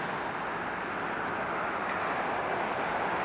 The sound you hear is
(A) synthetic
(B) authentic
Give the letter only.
B